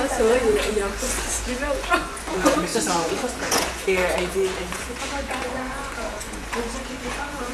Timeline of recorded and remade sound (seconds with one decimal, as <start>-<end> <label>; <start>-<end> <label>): 0.0-7.5 remade